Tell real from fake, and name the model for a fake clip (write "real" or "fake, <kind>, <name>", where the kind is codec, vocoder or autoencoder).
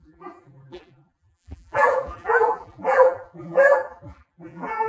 fake, vocoder, BigVGAN v2